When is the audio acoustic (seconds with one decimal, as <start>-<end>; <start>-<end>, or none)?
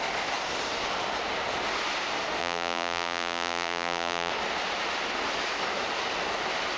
0.0-2.4; 4.3-6.8